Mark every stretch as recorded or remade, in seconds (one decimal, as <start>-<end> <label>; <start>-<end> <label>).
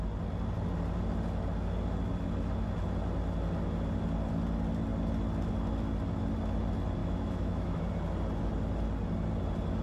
0.0-7.0 recorded; 7.0-7.8 remade; 7.8-9.8 recorded